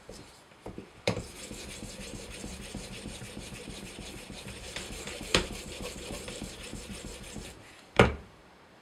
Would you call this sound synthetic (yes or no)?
yes